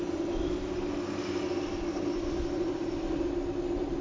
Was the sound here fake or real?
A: real